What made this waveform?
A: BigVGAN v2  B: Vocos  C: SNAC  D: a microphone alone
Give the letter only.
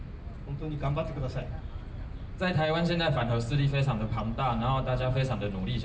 D